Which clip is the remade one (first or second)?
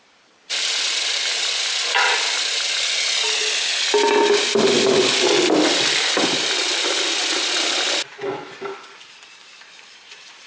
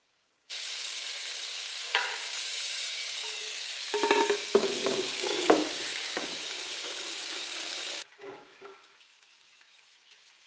second